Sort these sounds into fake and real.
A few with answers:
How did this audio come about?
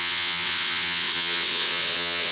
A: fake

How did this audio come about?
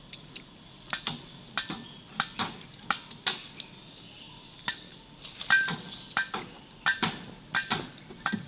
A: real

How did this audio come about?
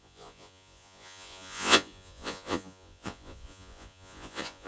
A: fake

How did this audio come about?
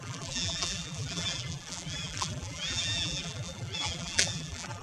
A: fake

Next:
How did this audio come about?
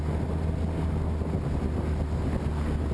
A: real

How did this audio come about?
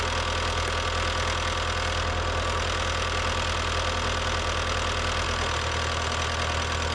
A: real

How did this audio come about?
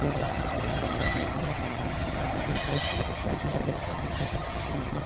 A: fake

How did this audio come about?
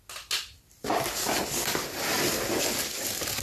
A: real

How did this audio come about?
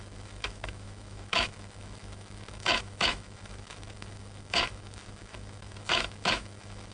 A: fake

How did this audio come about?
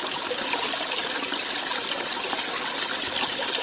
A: real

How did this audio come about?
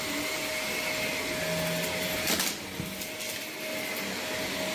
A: real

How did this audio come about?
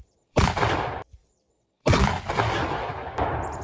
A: fake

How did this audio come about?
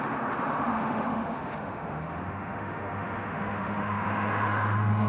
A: fake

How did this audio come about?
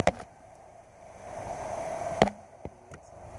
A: fake